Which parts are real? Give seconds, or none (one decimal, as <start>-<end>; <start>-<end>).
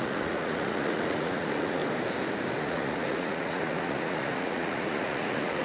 1.8-2.6